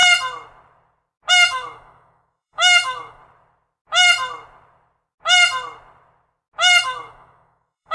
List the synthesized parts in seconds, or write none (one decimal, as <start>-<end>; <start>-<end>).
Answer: 1.3-3.2; 6.8-7.9